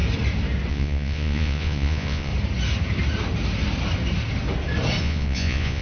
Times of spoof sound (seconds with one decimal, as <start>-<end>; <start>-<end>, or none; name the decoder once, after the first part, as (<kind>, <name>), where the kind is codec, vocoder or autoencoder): 0.7-2.3 (vocoder, Vocos); 5.0-5.8